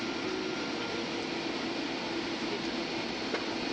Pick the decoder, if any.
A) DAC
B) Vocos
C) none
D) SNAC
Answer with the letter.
C